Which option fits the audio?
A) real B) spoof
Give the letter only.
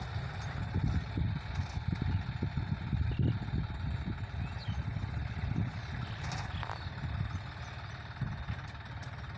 A